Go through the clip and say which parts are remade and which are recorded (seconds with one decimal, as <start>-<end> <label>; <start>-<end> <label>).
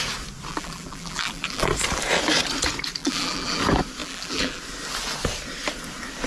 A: 0.0-0.5 recorded; 0.5-1.7 remade; 1.7-3.0 recorded; 3.0-3.6 remade; 3.6-4.0 recorded; 4.0-4.6 remade; 4.6-6.3 recorded